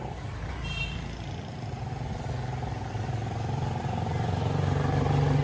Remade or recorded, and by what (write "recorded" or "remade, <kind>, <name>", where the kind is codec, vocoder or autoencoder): recorded